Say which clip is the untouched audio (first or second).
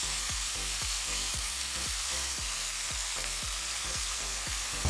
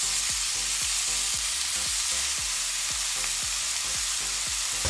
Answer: second